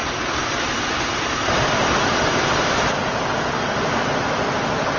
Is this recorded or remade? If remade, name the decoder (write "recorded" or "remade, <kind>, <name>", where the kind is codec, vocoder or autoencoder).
recorded